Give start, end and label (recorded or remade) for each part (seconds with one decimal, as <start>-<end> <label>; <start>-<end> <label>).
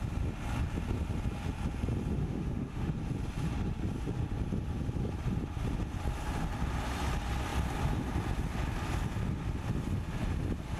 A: 0.0-2.2 recorded; 2.2-2.9 remade; 2.9-10.8 recorded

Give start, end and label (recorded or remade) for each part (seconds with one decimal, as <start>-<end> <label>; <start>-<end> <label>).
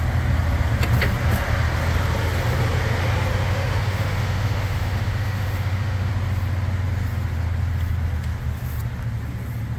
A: 0.0-3.3 recorded; 3.3-6.1 remade; 6.1-9.8 recorded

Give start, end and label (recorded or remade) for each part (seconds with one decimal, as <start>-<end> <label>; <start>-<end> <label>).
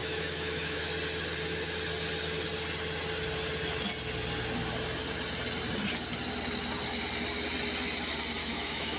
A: 0.0-0.8 remade; 0.8-8.4 recorded; 8.4-9.0 remade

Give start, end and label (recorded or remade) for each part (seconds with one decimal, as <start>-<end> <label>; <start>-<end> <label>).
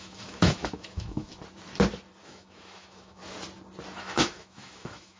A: 0.0-1.3 remade; 1.3-2.2 recorded; 2.2-3.2 remade; 3.2-4.0 recorded; 4.0-5.2 remade